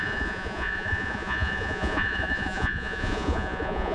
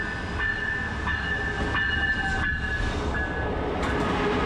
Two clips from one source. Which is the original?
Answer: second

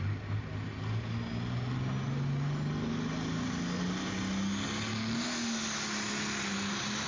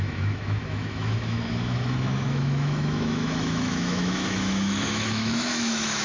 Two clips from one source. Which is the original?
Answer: first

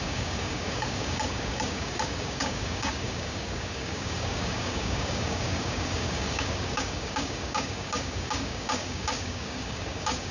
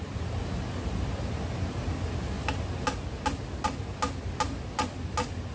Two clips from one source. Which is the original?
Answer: second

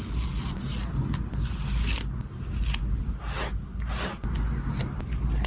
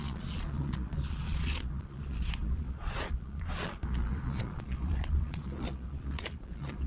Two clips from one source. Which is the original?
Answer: first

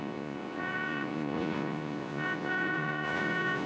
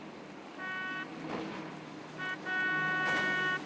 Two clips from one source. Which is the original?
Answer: second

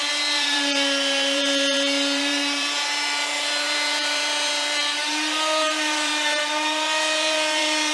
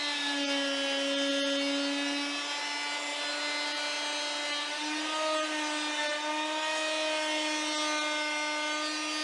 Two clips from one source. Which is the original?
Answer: second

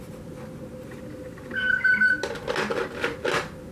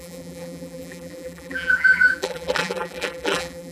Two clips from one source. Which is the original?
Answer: first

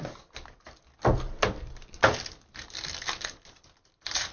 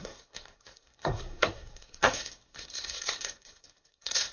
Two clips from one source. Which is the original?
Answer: first